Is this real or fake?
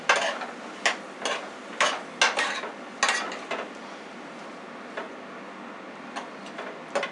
real